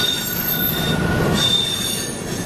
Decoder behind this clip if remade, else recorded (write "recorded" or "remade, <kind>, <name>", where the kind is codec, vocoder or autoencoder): recorded